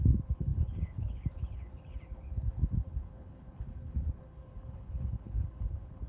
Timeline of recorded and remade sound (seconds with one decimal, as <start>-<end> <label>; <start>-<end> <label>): 0.0-6.1 remade